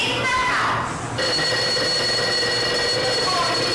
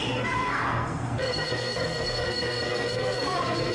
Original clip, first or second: first